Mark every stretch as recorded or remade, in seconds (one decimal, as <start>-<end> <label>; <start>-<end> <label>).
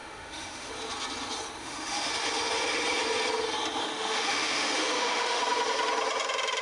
0.0-0.7 remade; 0.7-1.6 recorded; 1.6-2.1 remade; 2.1-3.8 recorded; 3.8-5.4 remade; 5.4-6.6 recorded